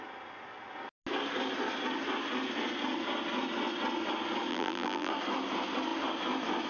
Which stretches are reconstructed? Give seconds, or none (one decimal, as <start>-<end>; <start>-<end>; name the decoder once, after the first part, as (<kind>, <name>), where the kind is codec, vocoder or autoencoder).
4.5-5.1 (vocoder, BigVGAN v2)